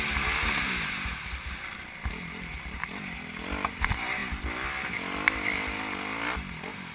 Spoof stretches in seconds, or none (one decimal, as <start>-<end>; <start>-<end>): none